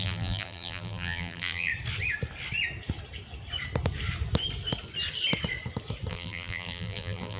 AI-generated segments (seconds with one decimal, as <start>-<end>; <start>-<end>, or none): 0.0-1.7; 6.1-7.4